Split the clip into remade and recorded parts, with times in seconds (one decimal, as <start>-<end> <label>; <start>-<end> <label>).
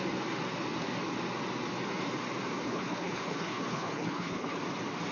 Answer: 0.0-2.6 recorded; 2.6-4.6 remade; 4.6-5.1 recorded